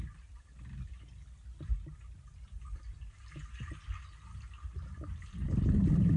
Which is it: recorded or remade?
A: recorded